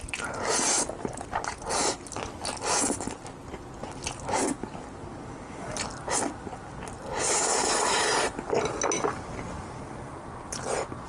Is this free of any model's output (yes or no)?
yes